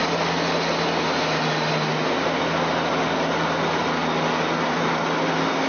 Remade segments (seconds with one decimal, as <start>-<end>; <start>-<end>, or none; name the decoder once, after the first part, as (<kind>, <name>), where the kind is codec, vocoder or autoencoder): none